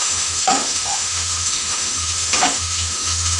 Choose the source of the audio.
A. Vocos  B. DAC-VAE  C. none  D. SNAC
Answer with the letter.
B